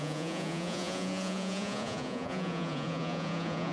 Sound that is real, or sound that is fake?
fake